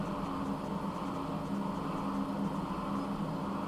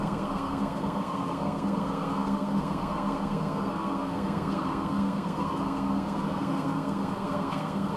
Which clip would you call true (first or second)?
first